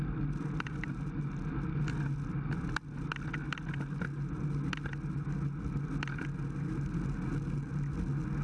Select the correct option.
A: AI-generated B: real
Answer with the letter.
B